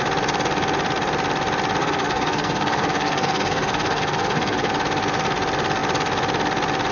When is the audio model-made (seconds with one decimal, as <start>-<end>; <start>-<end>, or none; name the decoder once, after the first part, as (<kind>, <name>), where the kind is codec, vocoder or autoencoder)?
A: 1.8-4.7 (codec, SNAC)